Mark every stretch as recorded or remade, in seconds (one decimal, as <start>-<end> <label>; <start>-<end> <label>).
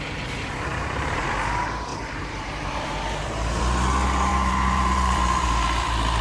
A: 0.0-0.7 recorded; 0.7-1.3 remade; 1.3-1.9 recorded; 1.9-3.6 remade; 3.6-4.3 recorded; 4.3-6.2 remade